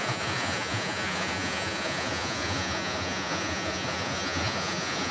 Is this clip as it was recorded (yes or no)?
no